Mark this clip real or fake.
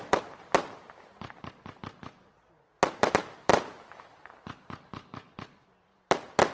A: fake